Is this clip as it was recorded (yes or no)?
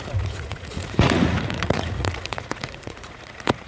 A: no